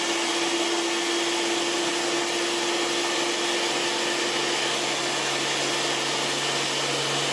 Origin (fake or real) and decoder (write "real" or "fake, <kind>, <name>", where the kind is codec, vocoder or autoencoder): real